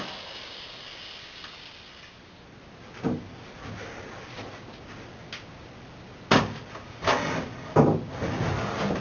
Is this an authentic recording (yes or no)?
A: yes